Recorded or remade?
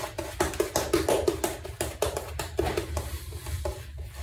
recorded